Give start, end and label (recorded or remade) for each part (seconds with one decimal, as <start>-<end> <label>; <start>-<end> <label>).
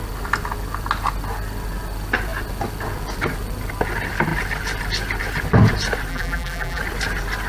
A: 0.0-6.1 recorded; 6.1-6.8 remade; 6.8-7.5 recorded